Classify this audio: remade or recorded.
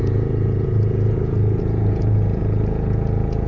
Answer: remade